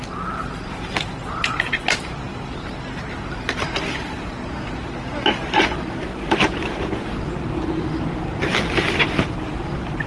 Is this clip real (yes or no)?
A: yes